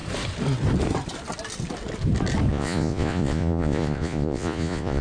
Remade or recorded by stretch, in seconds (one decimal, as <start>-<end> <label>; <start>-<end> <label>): 0.0-2.5 recorded; 2.5-5.0 remade